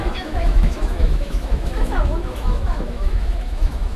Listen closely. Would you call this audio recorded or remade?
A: remade